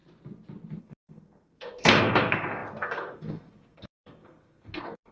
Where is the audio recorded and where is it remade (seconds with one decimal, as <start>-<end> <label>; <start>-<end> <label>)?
0.0-0.8 recorded; 0.8-5.1 remade